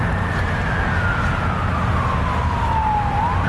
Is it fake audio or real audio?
real